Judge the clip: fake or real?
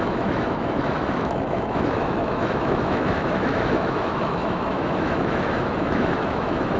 fake